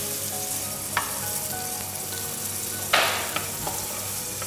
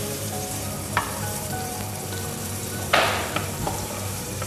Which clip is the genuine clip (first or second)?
first